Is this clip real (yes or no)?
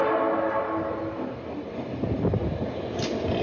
yes